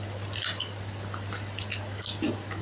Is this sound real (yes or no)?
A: yes